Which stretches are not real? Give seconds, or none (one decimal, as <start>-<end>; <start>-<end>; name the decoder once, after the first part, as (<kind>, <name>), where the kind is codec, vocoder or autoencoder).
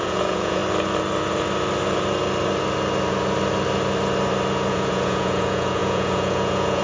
0.0-0.6 (vocoder, Vocos); 4.7-6.8